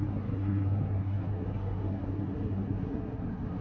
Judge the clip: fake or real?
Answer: fake